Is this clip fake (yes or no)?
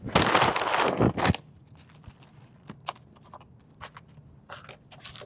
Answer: no